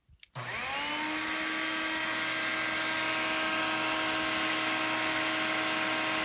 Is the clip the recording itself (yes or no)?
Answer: yes